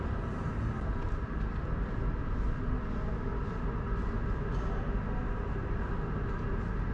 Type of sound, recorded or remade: recorded